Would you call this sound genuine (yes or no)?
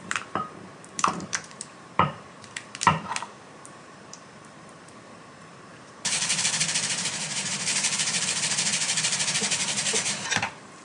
no